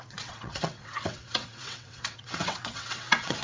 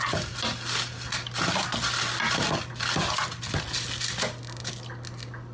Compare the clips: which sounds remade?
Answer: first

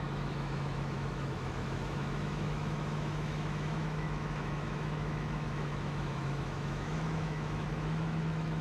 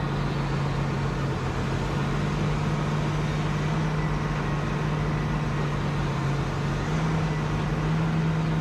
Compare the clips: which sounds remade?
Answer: first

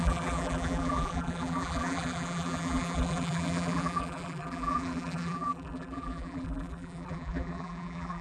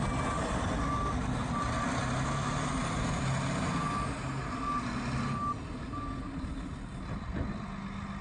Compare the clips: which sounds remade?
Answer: first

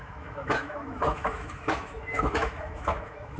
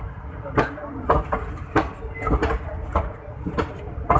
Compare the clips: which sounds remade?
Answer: first